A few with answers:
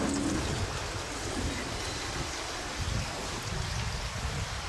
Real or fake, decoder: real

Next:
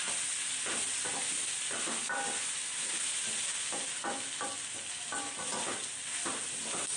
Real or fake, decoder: real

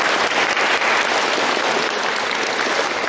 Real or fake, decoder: real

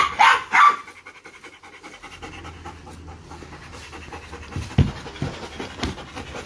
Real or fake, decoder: real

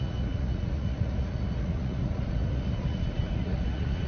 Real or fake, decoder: fake, vocoder, Vocos